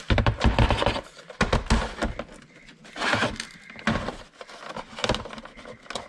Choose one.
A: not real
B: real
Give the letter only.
B